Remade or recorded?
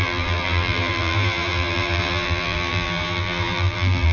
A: remade